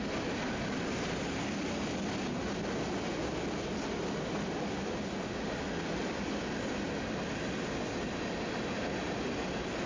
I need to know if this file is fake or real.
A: real